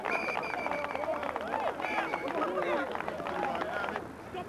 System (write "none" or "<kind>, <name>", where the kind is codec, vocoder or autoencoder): none